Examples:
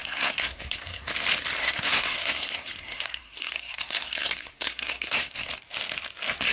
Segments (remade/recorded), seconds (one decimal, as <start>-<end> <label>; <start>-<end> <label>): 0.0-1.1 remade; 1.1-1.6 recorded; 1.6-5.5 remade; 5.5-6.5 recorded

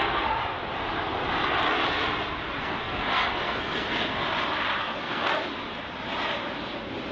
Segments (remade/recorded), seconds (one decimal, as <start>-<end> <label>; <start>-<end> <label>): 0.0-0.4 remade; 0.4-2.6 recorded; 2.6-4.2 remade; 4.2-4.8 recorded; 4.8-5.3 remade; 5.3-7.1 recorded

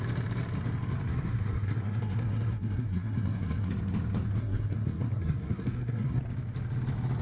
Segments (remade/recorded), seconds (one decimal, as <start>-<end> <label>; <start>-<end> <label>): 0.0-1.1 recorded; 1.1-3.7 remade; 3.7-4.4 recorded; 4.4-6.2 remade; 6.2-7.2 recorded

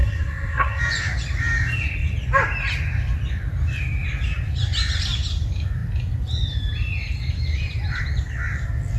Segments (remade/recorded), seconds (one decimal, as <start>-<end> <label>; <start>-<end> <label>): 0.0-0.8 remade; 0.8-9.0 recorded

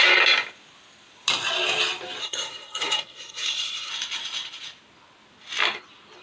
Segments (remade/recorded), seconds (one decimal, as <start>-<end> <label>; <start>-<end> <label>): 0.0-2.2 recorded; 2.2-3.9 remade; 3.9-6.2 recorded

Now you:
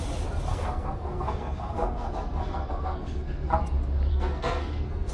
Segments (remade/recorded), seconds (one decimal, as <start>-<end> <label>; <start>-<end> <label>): 0.0-0.5 recorded; 0.5-3.6 remade; 3.6-4.1 recorded; 4.1-5.1 remade

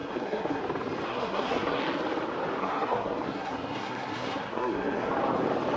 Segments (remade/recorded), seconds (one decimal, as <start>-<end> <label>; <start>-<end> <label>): 0.0-0.6 remade; 0.6-1.1 recorded; 1.1-1.8 remade; 1.8-2.6 recorded; 2.6-5.1 remade; 5.1-5.8 recorded